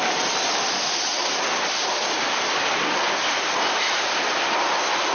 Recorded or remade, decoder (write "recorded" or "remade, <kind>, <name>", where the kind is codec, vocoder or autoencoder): recorded